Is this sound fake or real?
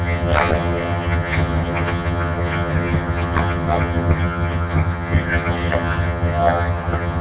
fake